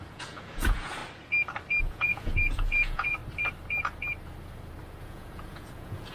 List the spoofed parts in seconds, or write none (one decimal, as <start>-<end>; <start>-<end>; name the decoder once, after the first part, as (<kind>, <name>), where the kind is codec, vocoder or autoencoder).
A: 0.0-1.0 (vocoder, Vocos); 1.8-3.2; 5.0-6.1